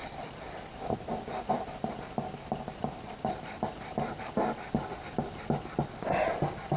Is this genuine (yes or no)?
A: yes